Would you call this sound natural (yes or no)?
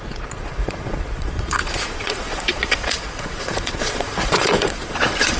no